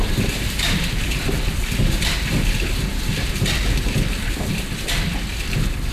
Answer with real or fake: fake